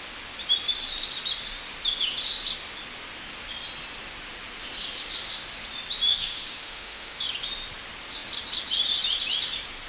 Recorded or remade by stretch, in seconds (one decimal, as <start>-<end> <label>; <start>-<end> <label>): 0.0-6.1 recorded; 6.1-7.2 remade; 7.2-9.9 recorded